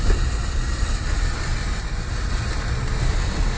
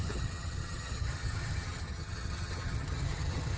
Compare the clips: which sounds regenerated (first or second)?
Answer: second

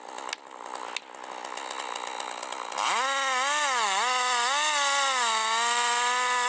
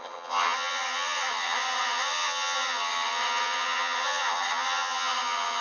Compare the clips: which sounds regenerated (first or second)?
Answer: second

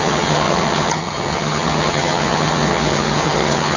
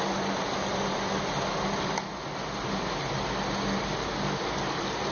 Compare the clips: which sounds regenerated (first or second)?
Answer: first